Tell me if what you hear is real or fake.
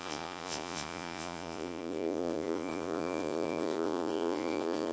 fake